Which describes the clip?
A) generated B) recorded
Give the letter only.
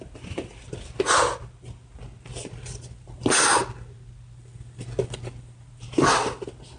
B